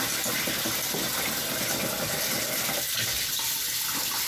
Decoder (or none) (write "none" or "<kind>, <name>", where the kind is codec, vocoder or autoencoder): none